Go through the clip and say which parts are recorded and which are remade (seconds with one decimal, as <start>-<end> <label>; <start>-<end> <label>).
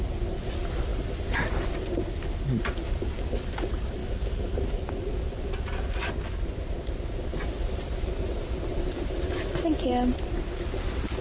0.0-11.2 recorded